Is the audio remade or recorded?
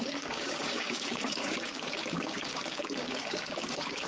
remade